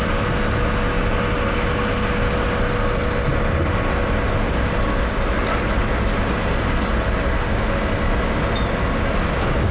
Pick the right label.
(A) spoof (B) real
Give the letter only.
B